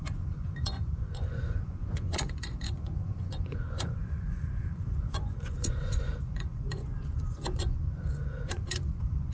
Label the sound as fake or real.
fake